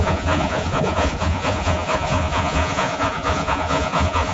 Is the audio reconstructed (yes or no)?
yes